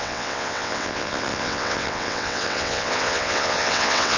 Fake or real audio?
fake